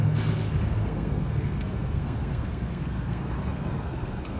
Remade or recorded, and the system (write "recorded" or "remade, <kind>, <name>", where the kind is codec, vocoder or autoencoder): remade, codec, SNAC